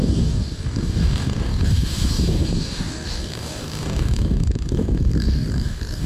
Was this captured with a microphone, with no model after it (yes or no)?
no